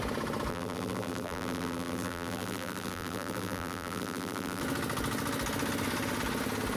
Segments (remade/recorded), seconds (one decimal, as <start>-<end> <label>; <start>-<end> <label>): 0.0-0.5 recorded; 0.5-4.6 remade; 4.6-6.8 recorded